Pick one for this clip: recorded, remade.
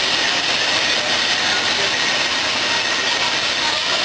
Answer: recorded